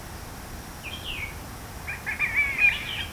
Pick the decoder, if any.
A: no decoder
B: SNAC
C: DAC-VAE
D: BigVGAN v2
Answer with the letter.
A